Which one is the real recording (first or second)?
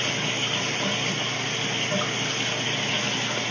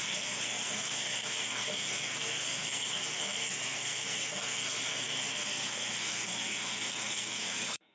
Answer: first